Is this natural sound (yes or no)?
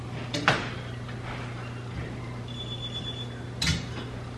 no